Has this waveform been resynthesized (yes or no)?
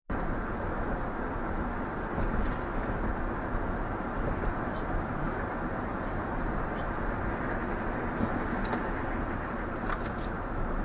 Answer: no